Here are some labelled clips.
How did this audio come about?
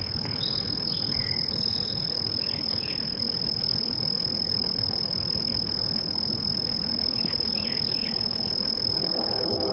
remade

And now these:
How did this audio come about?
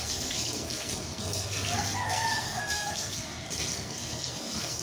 remade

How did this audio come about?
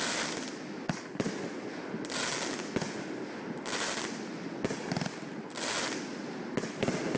recorded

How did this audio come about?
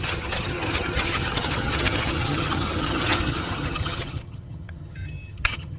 remade